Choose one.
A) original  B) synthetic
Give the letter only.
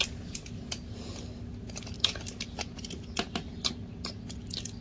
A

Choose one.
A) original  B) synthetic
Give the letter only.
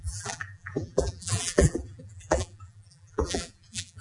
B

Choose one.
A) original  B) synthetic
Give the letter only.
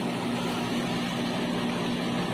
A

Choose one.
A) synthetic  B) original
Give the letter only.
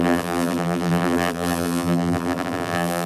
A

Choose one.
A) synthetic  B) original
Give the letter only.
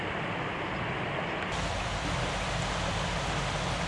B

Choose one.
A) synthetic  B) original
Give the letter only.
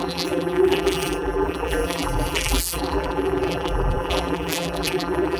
A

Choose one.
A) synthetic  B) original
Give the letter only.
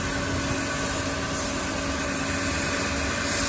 B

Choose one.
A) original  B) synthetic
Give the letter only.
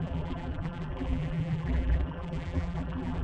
B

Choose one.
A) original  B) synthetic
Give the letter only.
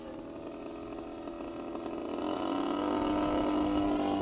A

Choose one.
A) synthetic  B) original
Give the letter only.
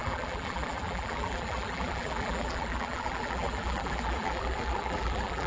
A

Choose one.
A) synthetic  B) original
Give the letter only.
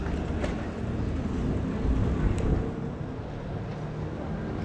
B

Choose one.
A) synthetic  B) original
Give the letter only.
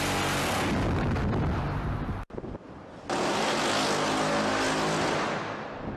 B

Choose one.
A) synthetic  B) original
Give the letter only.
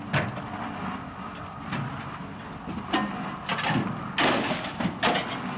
B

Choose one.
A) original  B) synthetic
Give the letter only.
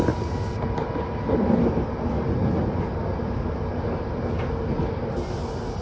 A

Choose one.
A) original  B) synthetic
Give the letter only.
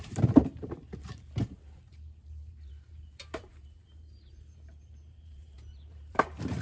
B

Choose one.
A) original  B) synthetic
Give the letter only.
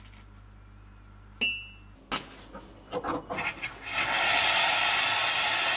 A